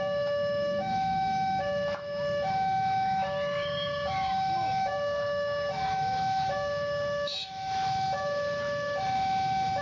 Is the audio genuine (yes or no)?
no